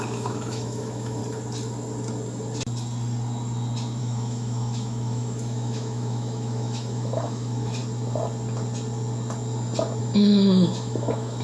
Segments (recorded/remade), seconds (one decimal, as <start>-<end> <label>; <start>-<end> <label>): 0.0-1.2 remade; 1.2-4.0 recorded; 4.0-7.8 remade; 7.8-10.0 recorded; 10.0-11.4 remade